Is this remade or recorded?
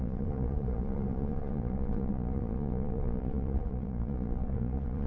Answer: remade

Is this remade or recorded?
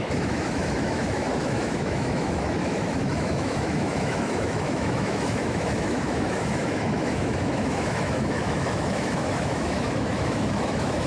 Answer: remade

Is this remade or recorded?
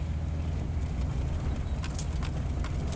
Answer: recorded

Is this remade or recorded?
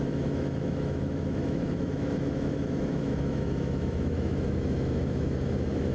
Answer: remade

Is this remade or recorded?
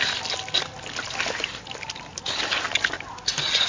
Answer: recorded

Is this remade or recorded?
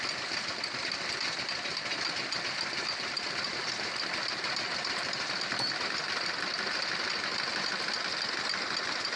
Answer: recorded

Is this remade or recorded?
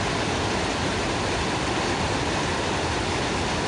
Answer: recorded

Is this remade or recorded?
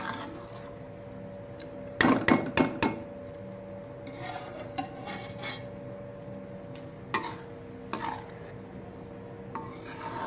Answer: recorded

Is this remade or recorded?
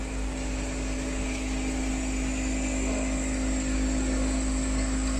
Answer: recorded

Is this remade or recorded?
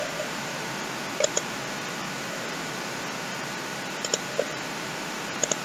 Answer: remade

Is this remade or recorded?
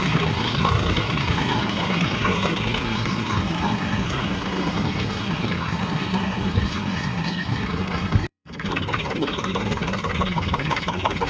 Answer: remade